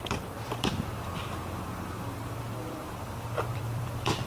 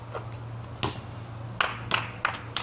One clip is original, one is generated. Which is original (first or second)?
second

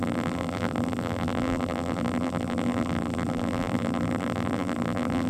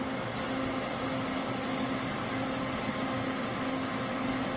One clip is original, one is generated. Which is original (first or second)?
second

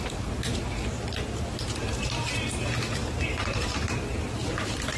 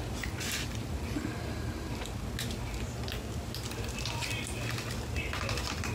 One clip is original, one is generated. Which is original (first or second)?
second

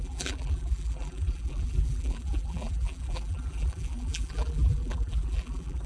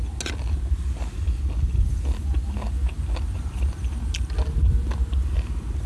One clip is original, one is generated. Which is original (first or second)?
second